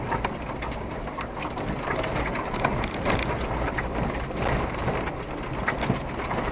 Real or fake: real